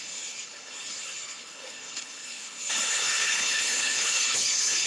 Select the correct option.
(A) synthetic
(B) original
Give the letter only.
A